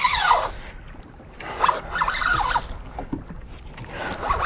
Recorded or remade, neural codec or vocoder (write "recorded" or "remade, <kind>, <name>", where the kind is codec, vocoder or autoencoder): recorded